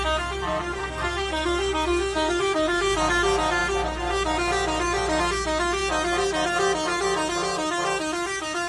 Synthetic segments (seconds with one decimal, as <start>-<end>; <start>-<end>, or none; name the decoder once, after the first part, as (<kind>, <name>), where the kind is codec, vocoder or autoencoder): 0.8-2.4 (codec, SNAC)